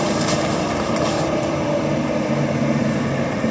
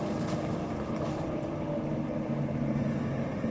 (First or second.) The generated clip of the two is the first